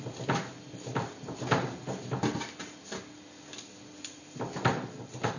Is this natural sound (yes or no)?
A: yes